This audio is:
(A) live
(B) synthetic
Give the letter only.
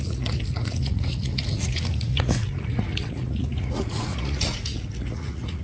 B